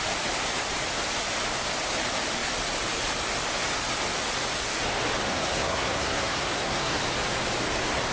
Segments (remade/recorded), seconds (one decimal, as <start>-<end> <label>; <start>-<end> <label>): 0.0-5.3 recorded; 5.3-7.0 remade; 7.0-8.1 recorded